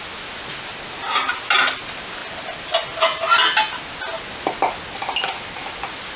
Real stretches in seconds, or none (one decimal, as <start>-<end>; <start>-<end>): 0.0-6.2